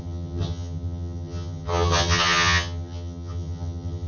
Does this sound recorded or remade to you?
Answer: remade